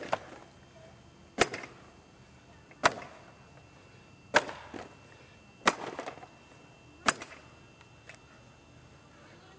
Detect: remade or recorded recorded